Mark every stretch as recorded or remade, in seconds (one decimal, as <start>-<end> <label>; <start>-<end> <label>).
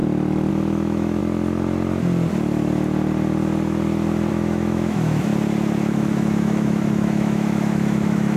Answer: 0.0-0.5 recorded; 0.5-1.2 remade; 1.2-4.3 recorded; 4.3-5.3 remade; 5.3-5.9 recorded; 5.9-8.4 remade